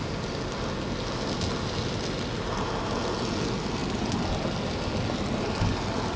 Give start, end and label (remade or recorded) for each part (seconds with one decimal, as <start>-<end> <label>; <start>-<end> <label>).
0.0-6.2 recorded